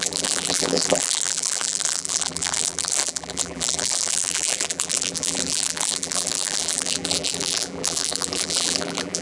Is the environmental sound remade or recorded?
remade